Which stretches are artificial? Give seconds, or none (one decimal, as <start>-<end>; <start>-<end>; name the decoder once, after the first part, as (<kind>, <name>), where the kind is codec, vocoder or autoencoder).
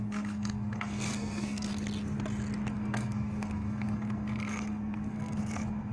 0.0-1.7 (codec, SNAC); 2.7-5.9